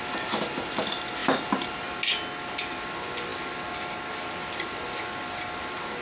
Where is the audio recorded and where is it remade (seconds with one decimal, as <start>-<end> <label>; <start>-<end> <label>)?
0.0-6.0 recorded

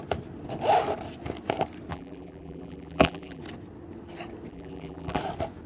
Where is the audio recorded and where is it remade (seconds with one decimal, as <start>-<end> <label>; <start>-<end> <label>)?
0.0-1.9 recorded; 1.9-3.4 remade; 3.4-4.5 recorded; 4.5-5.2 remade; 5.2-5.7 recorded

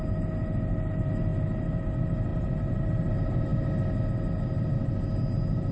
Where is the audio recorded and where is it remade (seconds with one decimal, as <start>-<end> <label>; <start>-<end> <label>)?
0.0-2.3 recorded; 2.3-3.1 remade; 3.1-5.7 recorded

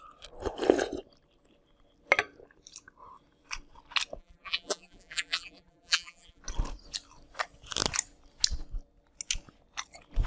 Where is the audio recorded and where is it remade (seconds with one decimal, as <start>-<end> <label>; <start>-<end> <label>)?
0.0-4.2 recorded; 4.2-6.4 remade; 6.4-10.3 recorded

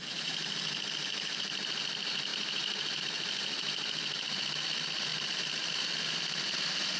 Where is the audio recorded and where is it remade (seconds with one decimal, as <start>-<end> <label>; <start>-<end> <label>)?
0.0-2.3 recorded; 2.3-3.0 remade; 3.0-7.0 recorded

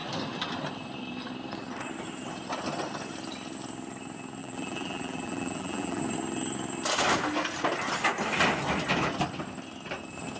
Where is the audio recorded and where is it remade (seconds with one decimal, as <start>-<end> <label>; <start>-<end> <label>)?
0.0-4.4 recorded; 4.4-6.0 remade; 6.0-10.4 recorded

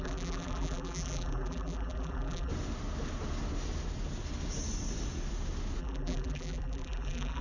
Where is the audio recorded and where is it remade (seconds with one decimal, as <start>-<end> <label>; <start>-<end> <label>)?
0.0-2.5 remade; 2.5-5.8 recorded; 5.8-7.4 remade

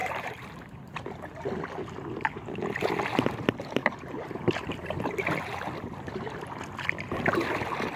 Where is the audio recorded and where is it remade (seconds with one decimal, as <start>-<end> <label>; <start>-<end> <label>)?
0.0-1.2 remade; 1.2-3.8 recorded; 3.8-5.0 remade; 5.0-8.0 recorded